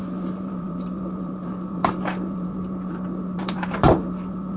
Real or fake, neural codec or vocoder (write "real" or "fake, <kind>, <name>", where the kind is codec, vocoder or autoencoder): fake, vocoder, BigVGAN v2